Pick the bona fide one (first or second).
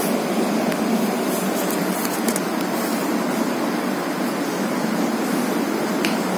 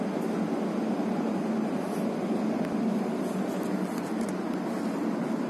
second